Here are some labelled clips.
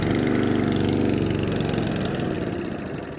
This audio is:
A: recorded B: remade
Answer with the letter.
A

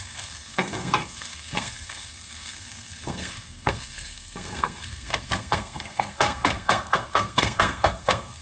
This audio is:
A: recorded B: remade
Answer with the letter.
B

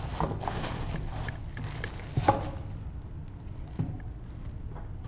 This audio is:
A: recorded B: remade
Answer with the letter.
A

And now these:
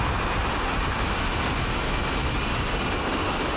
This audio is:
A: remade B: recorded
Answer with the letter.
B